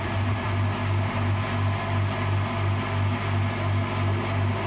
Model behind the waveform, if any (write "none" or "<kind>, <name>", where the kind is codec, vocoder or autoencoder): none